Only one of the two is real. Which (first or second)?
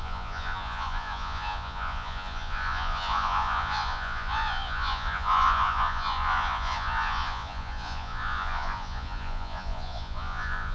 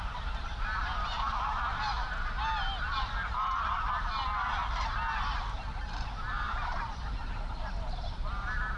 second